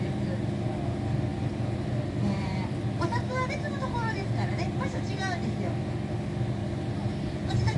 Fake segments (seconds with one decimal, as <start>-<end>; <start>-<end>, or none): 1.3-3.8; 6.6-7.8